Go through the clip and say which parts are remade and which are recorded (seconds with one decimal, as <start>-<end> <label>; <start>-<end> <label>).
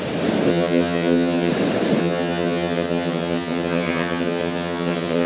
0.0-0.5 recorded; 0.5-1.5 remade; 1.5-2.0 recorded; 2.0-5.3 remade